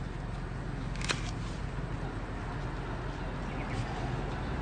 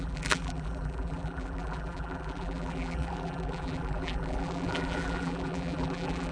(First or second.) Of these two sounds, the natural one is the first